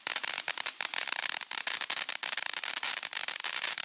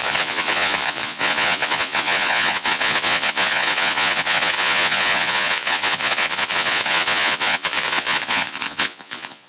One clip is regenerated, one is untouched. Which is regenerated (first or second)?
second